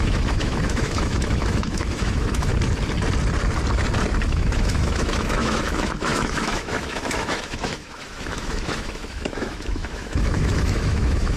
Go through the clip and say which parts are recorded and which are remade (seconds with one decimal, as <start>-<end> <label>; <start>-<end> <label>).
0.0-2.5 remade; 2.5-4.3 recorded; 4.3-11.4 remade